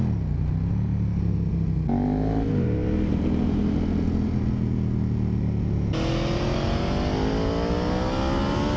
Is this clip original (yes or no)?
yes